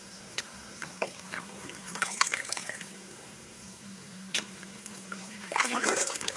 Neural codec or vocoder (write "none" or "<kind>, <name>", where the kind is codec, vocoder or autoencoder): codec, SNAC